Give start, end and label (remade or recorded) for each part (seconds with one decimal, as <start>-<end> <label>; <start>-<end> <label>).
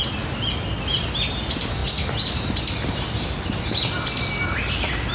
0.0-5.1 recorded